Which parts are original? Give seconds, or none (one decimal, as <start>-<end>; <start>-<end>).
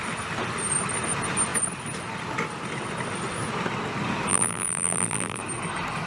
0.0-4.3; 5.4-6.1